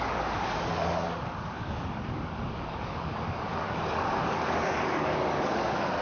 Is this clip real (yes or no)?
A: no